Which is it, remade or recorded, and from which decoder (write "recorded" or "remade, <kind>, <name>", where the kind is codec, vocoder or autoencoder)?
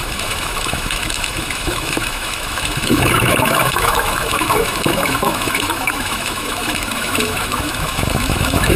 remade, autoencoder, DAC-VAE